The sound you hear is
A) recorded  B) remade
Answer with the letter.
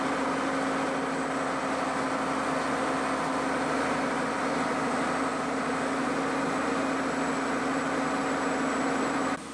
A